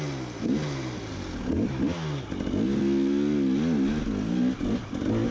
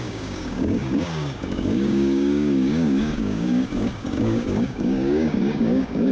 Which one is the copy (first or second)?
second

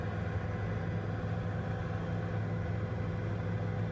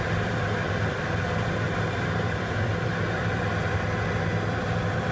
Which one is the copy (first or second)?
second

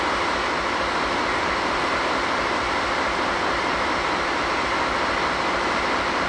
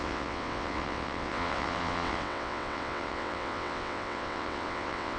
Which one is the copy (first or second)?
second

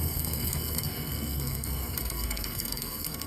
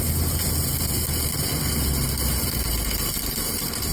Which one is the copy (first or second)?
first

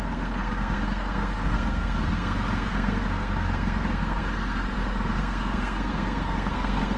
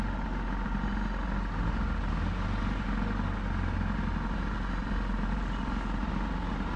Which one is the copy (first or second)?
first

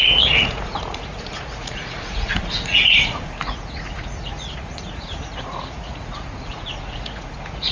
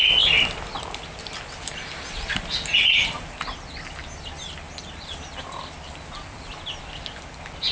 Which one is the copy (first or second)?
first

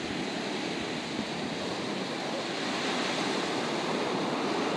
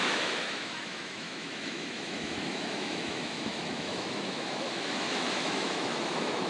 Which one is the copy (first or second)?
second